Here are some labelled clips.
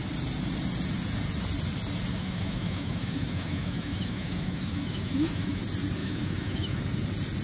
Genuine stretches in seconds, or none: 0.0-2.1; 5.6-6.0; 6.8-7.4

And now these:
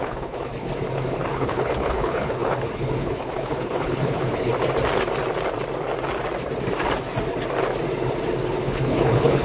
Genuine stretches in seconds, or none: 0.7-1.3; 4.5-8.6

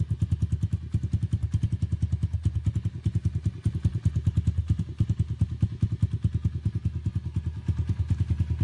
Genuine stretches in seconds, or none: 0.0-8.6